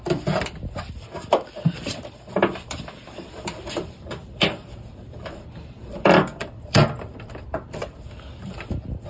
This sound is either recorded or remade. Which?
remade